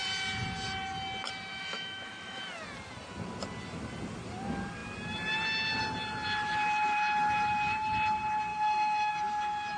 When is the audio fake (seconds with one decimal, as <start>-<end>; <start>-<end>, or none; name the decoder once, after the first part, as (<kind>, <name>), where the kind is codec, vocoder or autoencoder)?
1.5-2.4 (autoencoder, DAC-VAE); 8.5-9.1